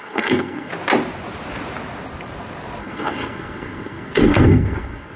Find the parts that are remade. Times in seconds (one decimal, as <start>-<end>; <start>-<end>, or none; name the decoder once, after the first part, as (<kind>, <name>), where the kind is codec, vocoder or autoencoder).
0.0-0.7 (codec, SNAC); 2.8-5.2